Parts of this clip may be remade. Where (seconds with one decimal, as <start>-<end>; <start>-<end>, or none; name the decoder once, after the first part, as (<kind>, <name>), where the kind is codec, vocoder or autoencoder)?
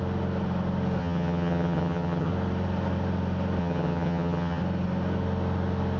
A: 1.0-2.3 (vocoder, HiFi-GAN); 3.6-4.6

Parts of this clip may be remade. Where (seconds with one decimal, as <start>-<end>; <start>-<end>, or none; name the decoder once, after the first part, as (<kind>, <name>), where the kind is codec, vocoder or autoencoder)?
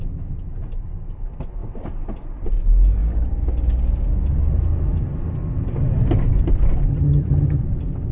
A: 6.9-7.6 (vocoder, HiFi-GAN)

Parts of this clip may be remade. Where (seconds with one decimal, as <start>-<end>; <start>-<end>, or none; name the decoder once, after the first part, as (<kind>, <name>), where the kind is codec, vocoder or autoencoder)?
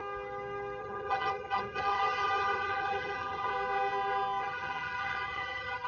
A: 0.8-3.5 (vocoder, HiFi-GAN); 4.4-5.9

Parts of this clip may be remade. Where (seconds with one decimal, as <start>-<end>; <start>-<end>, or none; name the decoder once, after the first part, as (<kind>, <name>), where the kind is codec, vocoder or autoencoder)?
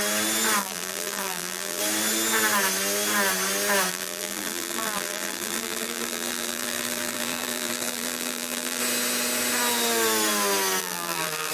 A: 0.6-1.8 (vocoder, BigVGAN v2); 3.9-8.8; 10.8-11.5